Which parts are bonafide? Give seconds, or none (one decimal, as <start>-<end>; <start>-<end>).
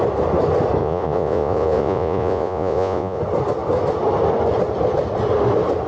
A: 0.0-0.8; 3.2-5.9